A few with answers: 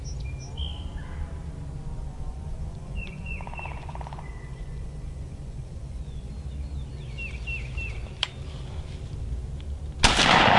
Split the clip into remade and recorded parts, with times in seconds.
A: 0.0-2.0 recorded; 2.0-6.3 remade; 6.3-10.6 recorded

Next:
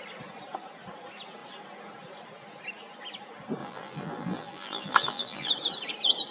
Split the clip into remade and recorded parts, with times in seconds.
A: 0.0-3.6 recorded; 3.6-5.5 remade; 5.5-6.3 recorded

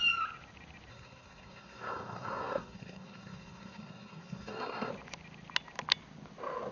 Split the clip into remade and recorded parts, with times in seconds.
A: 0.0-0.9 recorded; 0.9-4.9 remade; 4.9-6.7 recorded

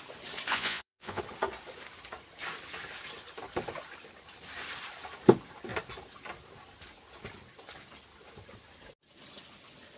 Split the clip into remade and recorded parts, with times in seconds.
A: 0.0-0.5 recorded; 0.5-1.2 remade; 1.2-10.0 recorded

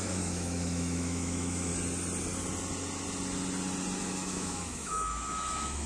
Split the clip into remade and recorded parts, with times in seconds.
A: 0.0-1.7 remade; 1.7-4.0 recorded; 4.0-5.9 remade

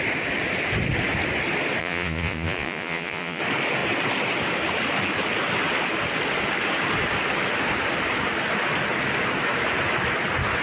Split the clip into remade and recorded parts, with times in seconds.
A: 0.0-1.8 recorded; 1.8-3.4 remade; 3.4-10.6 recorded

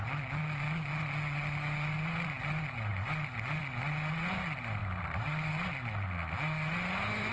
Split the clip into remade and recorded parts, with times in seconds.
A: 0.0-4.8 recorded; 4.8-5.5 remade; 5.5-7.3 recorded

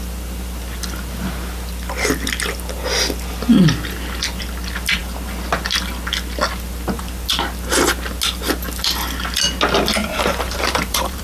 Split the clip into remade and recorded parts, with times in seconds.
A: 0.0-10.0 recorded; 10.0-11.2 remade